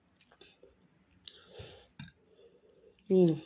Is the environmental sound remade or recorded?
recorded